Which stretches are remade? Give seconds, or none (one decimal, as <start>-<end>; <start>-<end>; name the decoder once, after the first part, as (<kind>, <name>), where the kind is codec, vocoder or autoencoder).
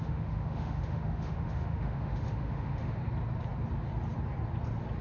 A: 0.0-3.0 (autoencoder, DAC-VAE)